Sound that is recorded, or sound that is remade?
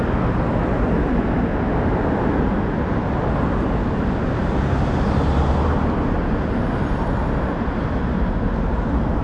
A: recorded